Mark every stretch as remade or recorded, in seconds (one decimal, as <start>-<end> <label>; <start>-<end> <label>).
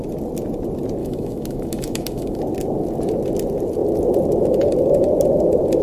0.0-1.0 recorded; 1.0-2.4 remade; 2.4-5.8 recorded